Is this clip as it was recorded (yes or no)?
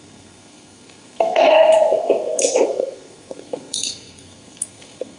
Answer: no